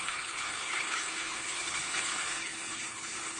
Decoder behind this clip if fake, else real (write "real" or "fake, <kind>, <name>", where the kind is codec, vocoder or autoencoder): fake, codec, HILCodec